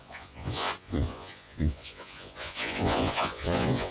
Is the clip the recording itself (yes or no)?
no